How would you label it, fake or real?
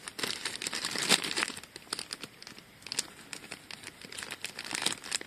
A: real